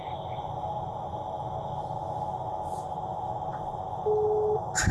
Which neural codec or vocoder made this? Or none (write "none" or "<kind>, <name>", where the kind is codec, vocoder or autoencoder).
none